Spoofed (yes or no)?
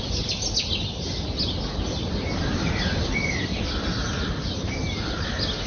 no